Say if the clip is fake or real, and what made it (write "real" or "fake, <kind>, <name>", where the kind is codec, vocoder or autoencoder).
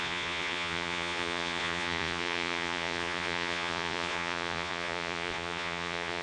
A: fake, vocoder, Vocos